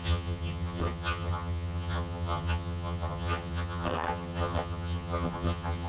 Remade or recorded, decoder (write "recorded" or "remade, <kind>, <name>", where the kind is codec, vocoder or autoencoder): remade, vocoder, HiFi-GAN